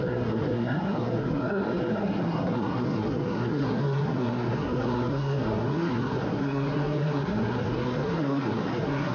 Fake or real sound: fake